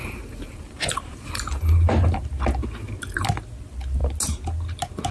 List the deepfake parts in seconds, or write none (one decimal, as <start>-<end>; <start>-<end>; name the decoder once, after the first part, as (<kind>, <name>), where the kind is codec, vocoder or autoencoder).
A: 0.0-2.2 (vocoder, BigVGAN v2)